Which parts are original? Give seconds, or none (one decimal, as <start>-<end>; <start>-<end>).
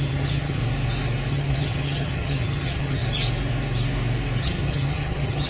0.6-1.3; 3.0-4.4